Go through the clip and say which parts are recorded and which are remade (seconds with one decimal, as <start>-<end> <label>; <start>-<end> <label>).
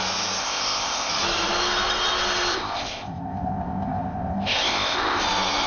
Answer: 0.0-0.4 recorded; 0.4-1.1 remade; 1.1-2.5 recorded; 2.5-5.2 remade; 5.2-5.7 recorded